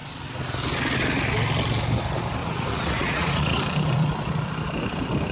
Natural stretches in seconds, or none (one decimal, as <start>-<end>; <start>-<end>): 0.0-2.4; 3.6-5.3